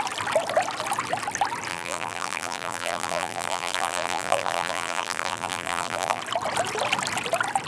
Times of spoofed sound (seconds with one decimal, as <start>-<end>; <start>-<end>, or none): 1.7-6.2